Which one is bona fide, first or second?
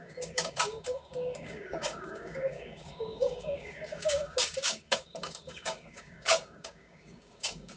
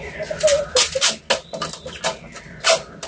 second